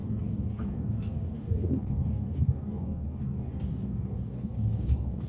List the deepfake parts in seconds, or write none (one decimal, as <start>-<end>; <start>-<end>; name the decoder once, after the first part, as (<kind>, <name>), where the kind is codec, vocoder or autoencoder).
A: 0.0-5.3 (codec, DAC)